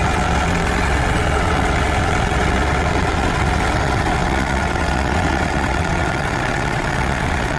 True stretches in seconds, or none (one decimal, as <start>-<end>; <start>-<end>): none